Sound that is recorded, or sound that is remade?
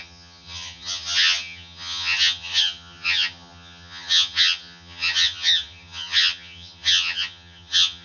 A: remade